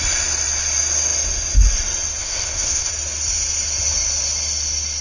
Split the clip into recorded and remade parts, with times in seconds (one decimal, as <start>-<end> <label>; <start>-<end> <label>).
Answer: 0.0-2.2 recorded; 2.2-2.9 remade; 2.9-5.0 recorded